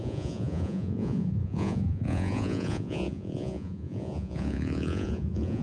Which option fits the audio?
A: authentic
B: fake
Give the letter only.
B